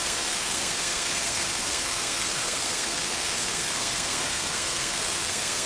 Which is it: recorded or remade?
remade